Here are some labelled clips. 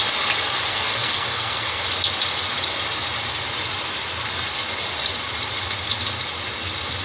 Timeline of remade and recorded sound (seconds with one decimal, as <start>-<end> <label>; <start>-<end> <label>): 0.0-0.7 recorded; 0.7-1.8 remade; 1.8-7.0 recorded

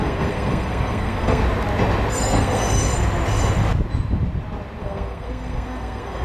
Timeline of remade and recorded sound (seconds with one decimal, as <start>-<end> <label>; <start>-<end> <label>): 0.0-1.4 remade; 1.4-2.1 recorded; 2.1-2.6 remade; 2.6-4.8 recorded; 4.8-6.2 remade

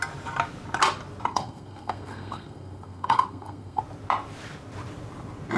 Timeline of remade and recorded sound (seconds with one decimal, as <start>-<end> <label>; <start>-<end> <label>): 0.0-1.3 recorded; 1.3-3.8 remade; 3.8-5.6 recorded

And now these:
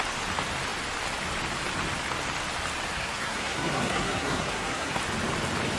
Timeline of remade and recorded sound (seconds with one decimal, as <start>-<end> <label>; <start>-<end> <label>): 0.0-2.9 recorded; 2.9-5.0 remade; 5.0-5.8 recorded

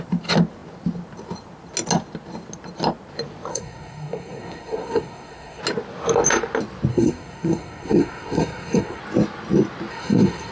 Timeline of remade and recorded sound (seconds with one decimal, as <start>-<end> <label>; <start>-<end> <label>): 0.0-3.5 recorded; 3.5-5.6 remade; 5.6-6.9 recorded; 6.9-9.0 remade; 9.0-9.9 recorded; 9.9-10.5 remade

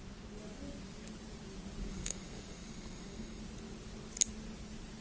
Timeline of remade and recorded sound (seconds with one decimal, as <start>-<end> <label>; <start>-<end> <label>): 0.0-1.9 recorded; 1.9-3.4 remade; 3.4-5.0 recorded